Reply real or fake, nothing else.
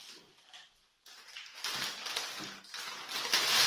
real